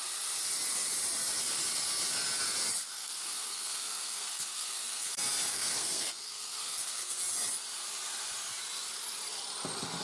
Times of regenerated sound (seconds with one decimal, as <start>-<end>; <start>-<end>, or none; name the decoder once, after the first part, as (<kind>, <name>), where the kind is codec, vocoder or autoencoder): 2.8-5.1 (codec, SNAC); 5.5-7.2

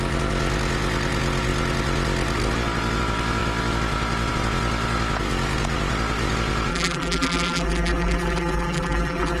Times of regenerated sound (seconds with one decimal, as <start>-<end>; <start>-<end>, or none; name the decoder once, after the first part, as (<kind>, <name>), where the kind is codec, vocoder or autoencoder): 6.7-9.4 (vocoder, BigVGAN v2)

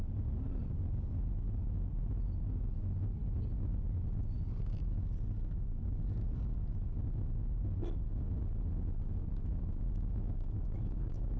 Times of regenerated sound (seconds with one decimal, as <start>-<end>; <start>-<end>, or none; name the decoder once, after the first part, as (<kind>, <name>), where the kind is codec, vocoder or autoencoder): 9.3-11.4 (autoencoder, DAC-VAE)